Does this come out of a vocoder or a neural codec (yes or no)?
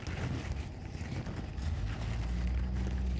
no